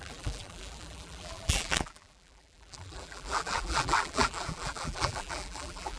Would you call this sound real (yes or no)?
no